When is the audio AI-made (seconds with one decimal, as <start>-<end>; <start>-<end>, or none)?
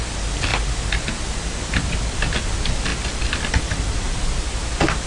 none